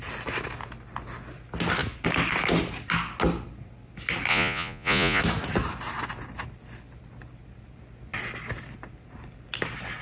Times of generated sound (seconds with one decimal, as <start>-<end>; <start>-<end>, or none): 4.3-5.2